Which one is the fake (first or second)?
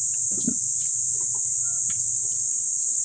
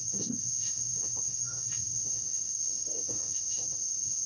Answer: second